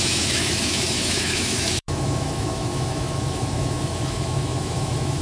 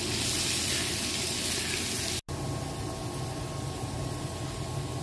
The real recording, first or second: second